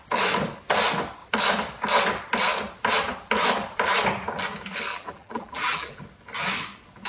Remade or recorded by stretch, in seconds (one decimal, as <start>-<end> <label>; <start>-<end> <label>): 0.0-4.9 recorded; 4.9-6.0 remade; 6.0-7.1 recorded